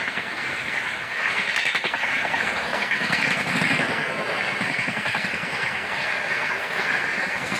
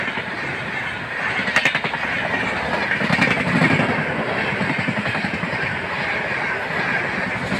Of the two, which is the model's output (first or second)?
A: first